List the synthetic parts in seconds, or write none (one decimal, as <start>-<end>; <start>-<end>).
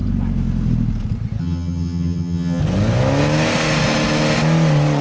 1.4-2.6